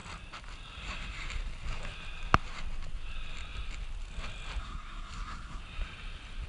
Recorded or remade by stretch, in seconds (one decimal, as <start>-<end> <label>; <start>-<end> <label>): 0.0-4.6 recorded; 4.6-5.6 remade; 5.6-6.5 recorded